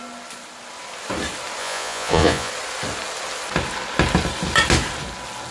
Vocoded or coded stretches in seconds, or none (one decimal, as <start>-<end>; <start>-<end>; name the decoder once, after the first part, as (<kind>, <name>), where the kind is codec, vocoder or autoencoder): 1.6-2.5 (vocoder, Vocos)

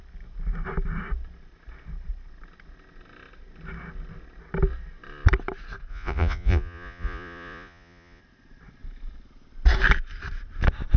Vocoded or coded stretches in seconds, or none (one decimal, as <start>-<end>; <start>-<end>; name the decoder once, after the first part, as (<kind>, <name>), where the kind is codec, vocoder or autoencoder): 5.9-8.2 (vocoder, Vocos)

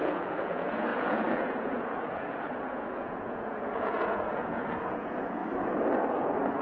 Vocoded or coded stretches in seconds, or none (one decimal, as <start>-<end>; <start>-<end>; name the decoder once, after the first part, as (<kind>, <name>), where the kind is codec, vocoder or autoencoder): 0.0-5.4 (vocoder, Vocos); 6.1-6.6

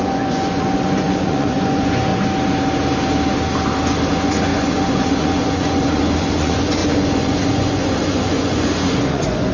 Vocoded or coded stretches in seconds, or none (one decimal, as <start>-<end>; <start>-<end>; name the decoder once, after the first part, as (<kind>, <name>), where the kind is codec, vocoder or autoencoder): 0.0-2.1 (vocoder, Vocos); 4.1-9.5

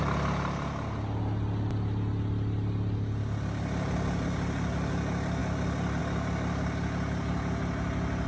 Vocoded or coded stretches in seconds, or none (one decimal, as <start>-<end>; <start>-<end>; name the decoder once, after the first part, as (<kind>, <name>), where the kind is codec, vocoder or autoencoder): none

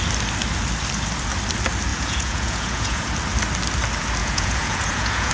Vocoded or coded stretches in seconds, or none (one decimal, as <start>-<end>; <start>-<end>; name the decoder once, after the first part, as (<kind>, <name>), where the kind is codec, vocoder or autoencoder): 1.9-3.1 (vocoder, Vocos); 4.2-5.3

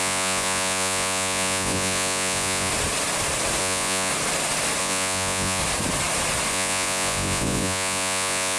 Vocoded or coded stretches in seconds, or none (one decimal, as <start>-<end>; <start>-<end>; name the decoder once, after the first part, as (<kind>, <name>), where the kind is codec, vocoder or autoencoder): 0.0-2.7 (vocoder, Vocos); 3.6-4.1; 4.8-5.6; 6.5-8.6

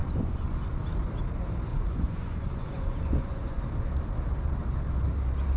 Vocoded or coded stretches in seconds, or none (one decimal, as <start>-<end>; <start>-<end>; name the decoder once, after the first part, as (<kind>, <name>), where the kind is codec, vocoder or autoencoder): 0.0-0.8 (vocoder, Vocos); 1.7-3.6